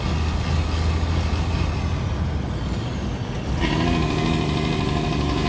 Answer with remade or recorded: recorded